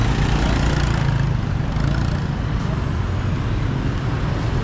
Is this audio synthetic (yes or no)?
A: no